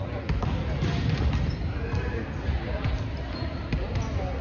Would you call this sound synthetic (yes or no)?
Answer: no